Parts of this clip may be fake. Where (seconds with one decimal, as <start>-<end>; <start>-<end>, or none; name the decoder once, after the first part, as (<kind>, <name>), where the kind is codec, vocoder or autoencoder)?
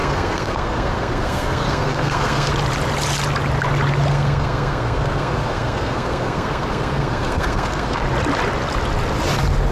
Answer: 0.0-2.5 (codec, SNAC); 4.1-8.0